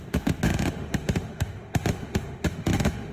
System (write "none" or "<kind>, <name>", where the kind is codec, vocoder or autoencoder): autoencoder, DAC-VAE